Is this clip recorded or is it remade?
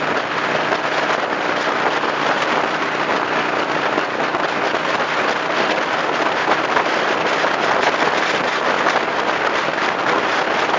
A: recorded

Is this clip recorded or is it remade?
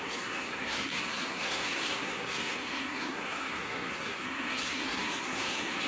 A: remade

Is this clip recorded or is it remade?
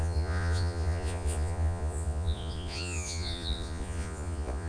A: remade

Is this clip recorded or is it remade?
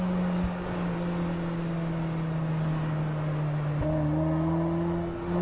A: recorded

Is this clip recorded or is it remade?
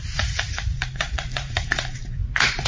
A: remade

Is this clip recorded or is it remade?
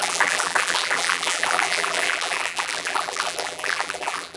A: remade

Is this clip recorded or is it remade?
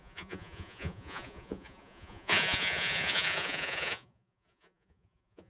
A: remade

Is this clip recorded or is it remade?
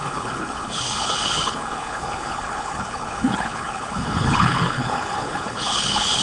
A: remade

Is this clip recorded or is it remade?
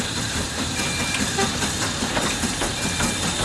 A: recorded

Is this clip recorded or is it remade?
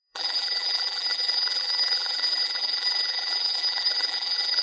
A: remade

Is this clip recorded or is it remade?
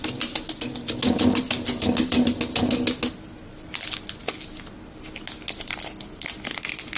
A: recorded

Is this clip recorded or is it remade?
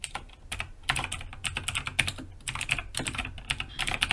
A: recorded